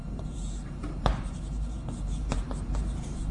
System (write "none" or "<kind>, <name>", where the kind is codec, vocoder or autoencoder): vocoder, BigVGAN v2